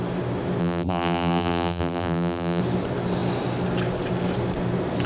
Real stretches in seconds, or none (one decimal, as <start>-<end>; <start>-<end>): 0.0-0.6; 2.6-5.1